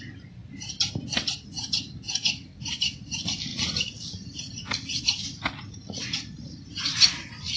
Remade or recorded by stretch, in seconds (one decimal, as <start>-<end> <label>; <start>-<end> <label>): 0.0-0.4 remade; 0.4-1.1 recorded; 1.1-7.6 remade